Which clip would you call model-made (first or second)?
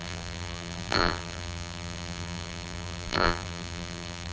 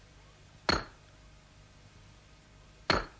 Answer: first